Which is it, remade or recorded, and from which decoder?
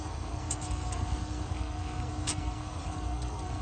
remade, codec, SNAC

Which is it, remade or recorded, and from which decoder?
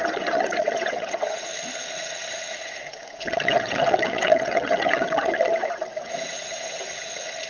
remade, vocoder, WaveNeXt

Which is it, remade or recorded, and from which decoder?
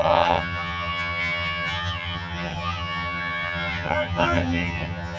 remade, vocoder, HiFi-GAN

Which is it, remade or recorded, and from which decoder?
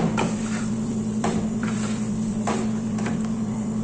remade, vocoder, BigVGAN v2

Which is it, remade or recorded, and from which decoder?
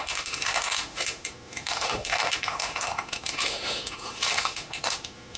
remade, autoencoder, DAC-VAE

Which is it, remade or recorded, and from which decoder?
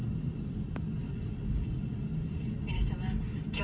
recorded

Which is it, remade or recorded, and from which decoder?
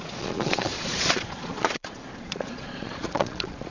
remade, vocoder, Vocos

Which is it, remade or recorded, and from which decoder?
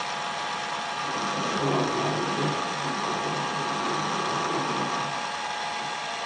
recorded